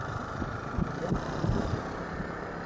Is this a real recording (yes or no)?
no